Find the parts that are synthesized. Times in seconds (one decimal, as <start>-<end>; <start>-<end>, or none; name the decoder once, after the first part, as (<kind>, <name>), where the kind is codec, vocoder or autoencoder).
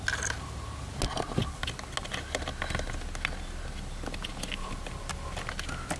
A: none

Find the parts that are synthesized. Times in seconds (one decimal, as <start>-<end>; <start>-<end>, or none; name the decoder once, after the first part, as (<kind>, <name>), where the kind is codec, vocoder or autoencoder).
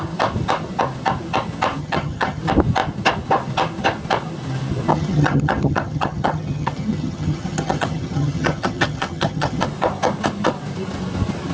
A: 1.8-2.4 (vocoder, HiFi-GAN); 4.9-9.6